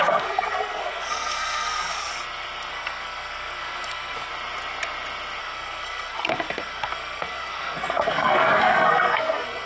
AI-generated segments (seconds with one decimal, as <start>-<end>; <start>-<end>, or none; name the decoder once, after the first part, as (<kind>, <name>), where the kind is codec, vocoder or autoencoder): 0.0-2.1 (codec, SNAC); 2.7-4.3; 5.4-9.7